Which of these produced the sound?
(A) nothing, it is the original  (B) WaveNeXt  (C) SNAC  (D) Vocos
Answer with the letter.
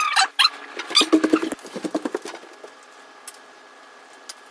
A